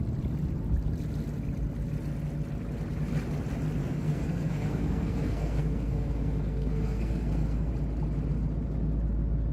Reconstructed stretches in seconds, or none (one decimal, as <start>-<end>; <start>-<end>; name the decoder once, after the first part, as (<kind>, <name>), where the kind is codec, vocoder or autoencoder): 3.8-7.7 (codec, SNAC)